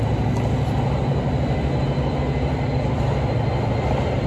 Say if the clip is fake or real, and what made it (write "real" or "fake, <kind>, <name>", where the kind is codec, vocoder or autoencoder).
real